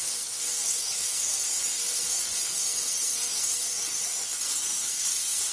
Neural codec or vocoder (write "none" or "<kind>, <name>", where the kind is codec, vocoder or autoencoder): codec, SNAC